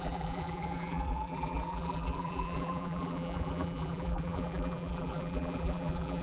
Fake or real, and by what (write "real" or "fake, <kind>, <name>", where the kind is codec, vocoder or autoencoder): fake, vocoder, BigVGAN v2